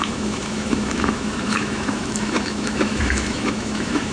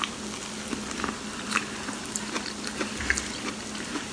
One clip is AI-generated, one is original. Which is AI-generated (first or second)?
first